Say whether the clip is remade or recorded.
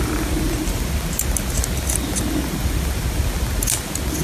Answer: recorded